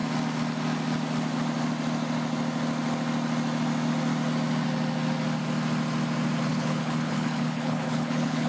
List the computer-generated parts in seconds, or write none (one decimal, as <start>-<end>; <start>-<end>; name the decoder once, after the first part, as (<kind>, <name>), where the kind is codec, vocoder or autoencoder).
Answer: 6.5-8.5 (codec, HILCodec)